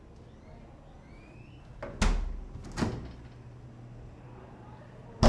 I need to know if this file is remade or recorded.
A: recorded